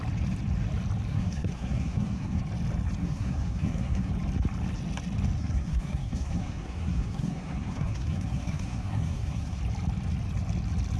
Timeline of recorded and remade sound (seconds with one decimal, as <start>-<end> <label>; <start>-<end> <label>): 0.0-1.1 recorded; 1.1-2.4 remade; 2.4-3.0 recorded; 3.0-4.1 remade; 4.1-5.4 recorded; 5.4-9.6 remade; 9.6-11.0 recorded